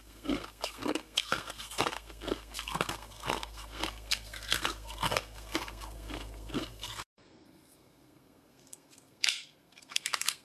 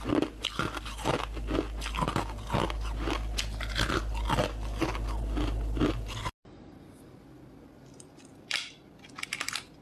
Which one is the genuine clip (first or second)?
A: second